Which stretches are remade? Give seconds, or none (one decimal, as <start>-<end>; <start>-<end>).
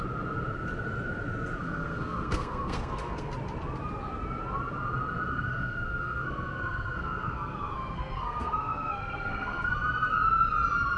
1.6-3.3; 5.3-9.7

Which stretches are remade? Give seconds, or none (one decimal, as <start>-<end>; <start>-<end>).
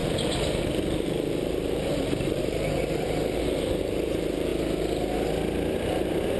0.0-4.5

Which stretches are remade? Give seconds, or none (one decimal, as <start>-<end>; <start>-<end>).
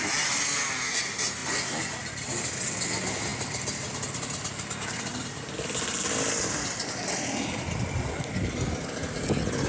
none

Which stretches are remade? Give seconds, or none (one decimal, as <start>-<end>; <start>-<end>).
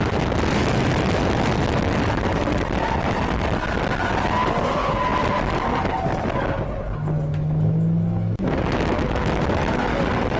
0.6-2.2; 7.3-10.0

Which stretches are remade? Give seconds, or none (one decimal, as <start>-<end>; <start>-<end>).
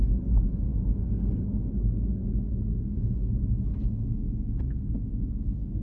0.7-1.7; 2.7-3.3; 3.7-5.8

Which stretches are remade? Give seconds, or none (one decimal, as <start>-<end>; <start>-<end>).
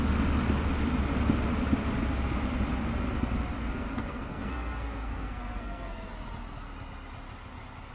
3.6-6.1